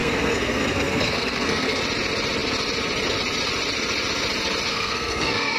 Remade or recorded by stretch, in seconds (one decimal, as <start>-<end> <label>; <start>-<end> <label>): 0.0-1.8 remade; 1.8-4.7 recorded; 4.7-5.6 remade